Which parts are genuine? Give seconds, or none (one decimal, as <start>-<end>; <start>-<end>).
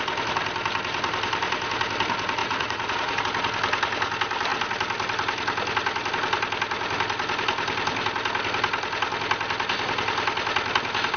0.0-2.4; 3.2-11.2